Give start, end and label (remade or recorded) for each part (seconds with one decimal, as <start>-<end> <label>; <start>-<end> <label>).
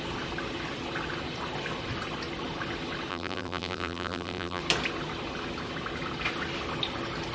0.0-3.1 recorded; 3.1-4.6 remade; 4.6-7.3 recorded